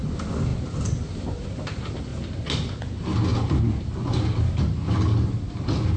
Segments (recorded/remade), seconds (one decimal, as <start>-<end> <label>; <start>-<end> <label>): 0.0-6.0 recorded